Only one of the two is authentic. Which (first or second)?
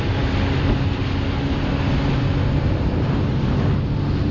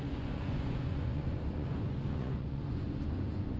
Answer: first